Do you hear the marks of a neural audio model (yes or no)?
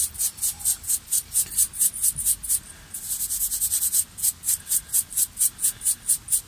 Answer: no